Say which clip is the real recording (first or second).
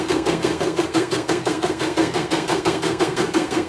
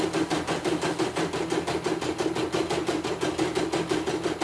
second